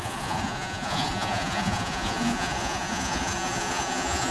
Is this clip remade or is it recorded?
remade